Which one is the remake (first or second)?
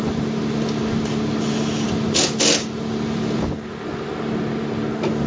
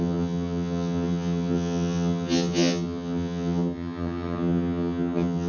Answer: second